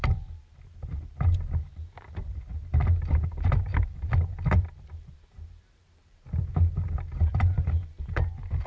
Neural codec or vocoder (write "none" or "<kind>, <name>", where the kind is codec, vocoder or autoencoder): vocoder, BigVGAN v2